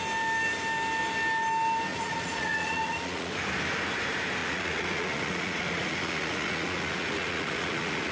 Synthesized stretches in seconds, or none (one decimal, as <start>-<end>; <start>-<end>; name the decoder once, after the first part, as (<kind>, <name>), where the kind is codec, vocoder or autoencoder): 1.9-3.3 (vocoder, Vocos); 4.4-8.1